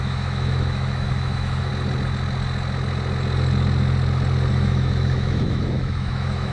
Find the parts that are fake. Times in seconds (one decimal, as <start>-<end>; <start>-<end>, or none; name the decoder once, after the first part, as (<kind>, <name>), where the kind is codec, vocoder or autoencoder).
0.0-1.7 (autoencoder, DAC-VAE); 4.5-6.5